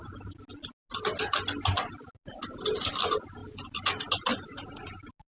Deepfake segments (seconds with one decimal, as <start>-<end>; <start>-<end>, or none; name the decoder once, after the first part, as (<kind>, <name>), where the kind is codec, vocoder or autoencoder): none